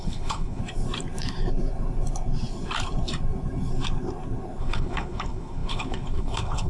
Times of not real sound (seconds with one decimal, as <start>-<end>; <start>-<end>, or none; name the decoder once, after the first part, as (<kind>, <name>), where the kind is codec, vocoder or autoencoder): 0.0-0.6 (codec, HILCodec); 4.6-6.7